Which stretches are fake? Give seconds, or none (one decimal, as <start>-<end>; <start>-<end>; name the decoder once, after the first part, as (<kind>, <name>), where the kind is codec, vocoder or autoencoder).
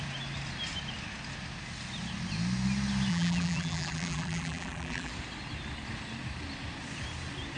3.1-5.1 (vocoder, BigVGAN v2)